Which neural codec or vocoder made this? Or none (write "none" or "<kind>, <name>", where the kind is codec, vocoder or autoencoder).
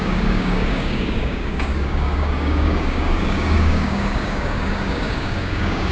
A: codec, DAC